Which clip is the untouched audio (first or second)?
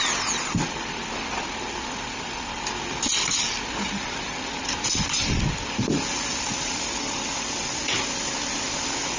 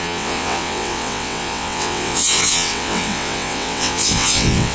first